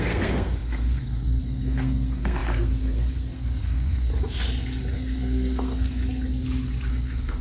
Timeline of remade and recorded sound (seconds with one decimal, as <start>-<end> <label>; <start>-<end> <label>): 0.0-4.1 remade; 4.1-4.9 recorded; 4.9-6.0 remade; 6.0-6.9 recorded; 6.9-7.4 remade